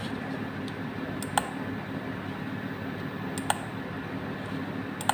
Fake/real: real